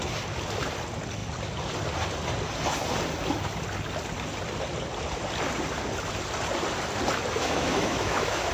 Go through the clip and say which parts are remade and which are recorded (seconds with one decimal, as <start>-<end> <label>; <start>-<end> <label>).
0.0-7.4 recorded; 7.4-8.5 remade